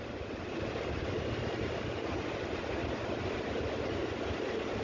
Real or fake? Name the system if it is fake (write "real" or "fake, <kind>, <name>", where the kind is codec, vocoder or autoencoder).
real